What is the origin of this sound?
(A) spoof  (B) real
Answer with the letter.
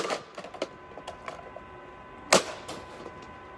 B